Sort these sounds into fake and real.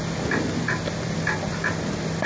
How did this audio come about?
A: real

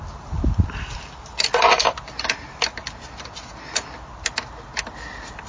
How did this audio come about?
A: real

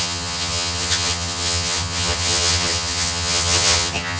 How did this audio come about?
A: fake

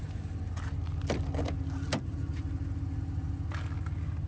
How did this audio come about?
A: real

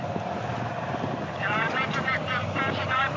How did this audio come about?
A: real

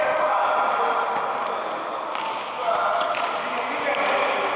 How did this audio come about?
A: real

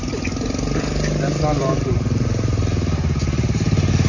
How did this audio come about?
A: real